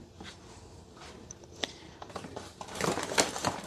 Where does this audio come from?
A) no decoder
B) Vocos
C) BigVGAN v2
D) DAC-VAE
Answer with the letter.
C